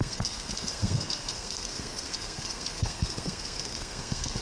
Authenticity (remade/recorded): remade